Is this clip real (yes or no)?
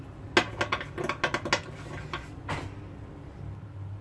yes